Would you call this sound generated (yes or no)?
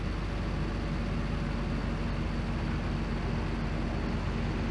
no